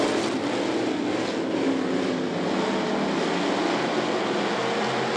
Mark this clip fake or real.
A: real